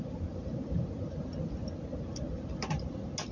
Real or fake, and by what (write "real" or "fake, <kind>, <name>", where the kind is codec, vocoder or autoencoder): real